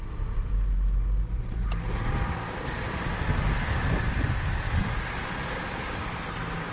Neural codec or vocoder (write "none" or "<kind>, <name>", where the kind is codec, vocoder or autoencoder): none